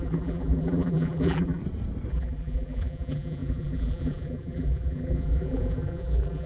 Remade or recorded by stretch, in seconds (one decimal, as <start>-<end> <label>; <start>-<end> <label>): 0.0-1.6 remade; 1.6-2.1 recorded; 2.1-6.5 remade